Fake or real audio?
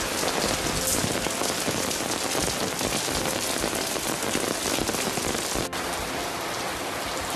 real